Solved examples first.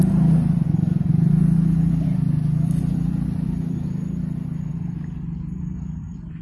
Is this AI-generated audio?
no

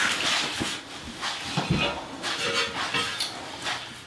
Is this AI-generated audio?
no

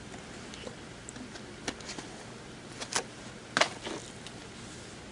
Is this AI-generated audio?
no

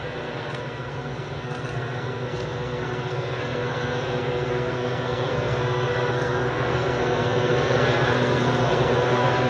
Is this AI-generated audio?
yes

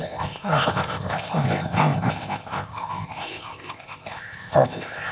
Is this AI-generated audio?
yes